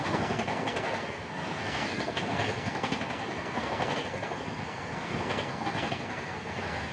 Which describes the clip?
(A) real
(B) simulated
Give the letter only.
B